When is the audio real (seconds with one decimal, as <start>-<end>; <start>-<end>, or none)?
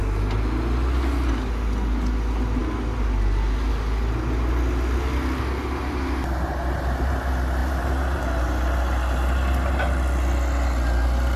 0.0-7.6; 8.2-11.4